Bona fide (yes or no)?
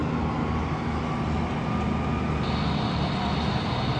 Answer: yes